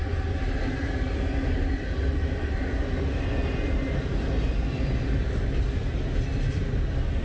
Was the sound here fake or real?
real